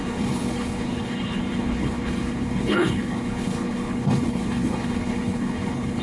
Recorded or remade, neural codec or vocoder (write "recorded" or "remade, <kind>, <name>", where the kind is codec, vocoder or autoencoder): remade, codec, HILCodec